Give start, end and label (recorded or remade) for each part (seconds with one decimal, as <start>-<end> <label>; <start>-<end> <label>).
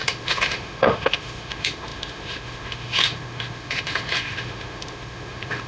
0.0-5.7 remade